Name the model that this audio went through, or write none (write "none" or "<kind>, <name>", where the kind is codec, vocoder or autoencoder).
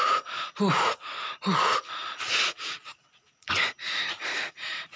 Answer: vocoder, Vocos